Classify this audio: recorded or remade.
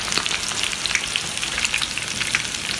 recorded